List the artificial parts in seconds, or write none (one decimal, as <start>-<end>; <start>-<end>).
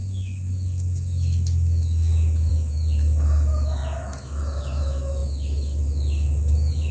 0.0-6.9